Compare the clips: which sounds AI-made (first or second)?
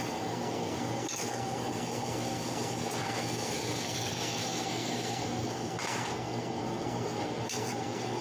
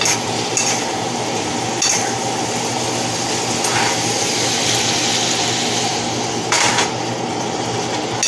first